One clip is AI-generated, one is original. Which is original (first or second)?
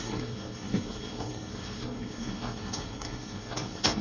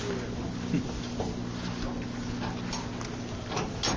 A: second